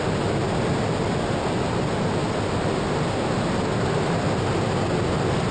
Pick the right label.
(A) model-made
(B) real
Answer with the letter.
B